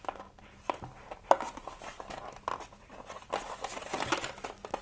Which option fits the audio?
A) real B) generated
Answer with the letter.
A